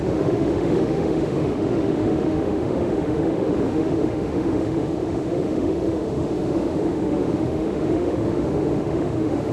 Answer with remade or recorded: remade